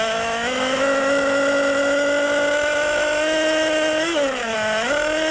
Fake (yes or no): yes